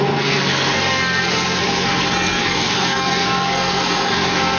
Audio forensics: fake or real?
fake